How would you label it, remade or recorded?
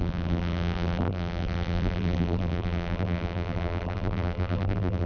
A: remade